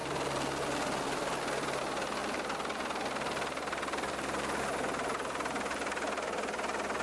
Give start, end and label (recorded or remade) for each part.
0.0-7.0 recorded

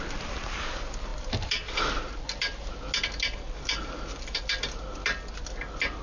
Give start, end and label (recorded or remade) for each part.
0.0-6.0 recorded